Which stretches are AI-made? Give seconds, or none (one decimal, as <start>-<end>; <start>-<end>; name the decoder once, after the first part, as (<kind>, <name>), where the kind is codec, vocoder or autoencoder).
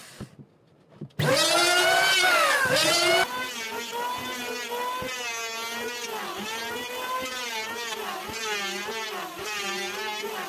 1.6-2.2 (vocoder, BigVGAN v2)